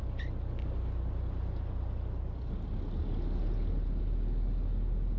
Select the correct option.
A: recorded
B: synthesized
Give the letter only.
A